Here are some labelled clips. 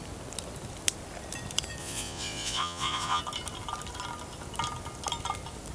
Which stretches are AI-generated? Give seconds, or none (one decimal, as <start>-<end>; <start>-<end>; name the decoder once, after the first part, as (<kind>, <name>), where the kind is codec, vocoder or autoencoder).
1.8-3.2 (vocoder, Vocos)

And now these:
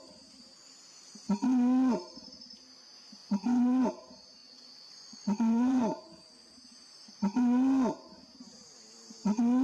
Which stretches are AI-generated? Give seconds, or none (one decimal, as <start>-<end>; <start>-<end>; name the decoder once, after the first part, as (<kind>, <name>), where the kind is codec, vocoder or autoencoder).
3.2-3.8 (vocoder, Vocos); 4.4-5.8

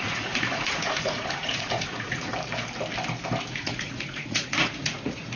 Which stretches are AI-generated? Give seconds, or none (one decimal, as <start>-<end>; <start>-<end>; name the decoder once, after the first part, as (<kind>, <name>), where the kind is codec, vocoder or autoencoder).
0.0-2.3 (vocoder, Vocos); 3.5-5.4

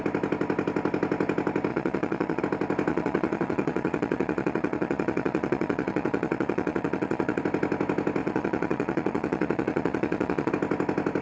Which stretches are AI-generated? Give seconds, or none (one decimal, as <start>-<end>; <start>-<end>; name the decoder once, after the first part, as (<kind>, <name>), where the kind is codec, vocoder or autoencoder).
1.7-2.4 (vocoder, Vocos); 2.9-7.4; 8.2-10.5